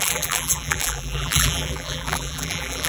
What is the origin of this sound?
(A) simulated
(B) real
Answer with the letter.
A